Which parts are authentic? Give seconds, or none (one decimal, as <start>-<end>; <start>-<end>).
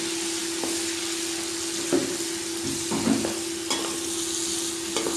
0.0-5.2